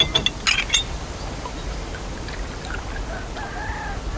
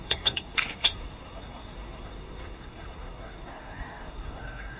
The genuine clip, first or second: first